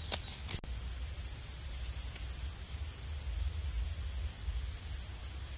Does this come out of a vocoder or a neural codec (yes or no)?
no